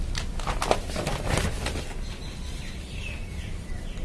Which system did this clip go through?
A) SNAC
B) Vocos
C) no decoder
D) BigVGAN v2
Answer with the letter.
C